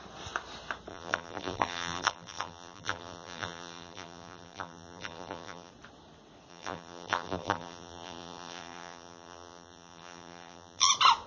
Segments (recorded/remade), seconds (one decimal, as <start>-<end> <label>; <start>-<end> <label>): 0.0-0.9 recorded; 0.9-5.7 remade; 5.7-6.5 recorded; 6.5-10.9 remade; 10.9-11.3 recorded